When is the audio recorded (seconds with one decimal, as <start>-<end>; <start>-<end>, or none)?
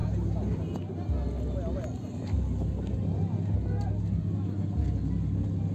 0.0-5.7